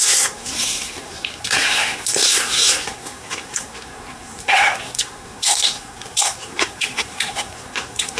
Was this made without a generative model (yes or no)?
no